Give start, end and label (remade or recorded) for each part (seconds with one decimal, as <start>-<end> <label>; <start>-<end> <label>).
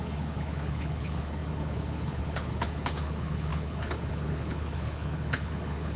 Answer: 0.0-6.0 remade